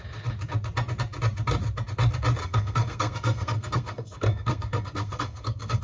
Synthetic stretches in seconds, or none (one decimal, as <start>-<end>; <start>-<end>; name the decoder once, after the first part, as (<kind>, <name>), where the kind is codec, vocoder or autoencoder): 2.4-5.8 (codec, SNAC)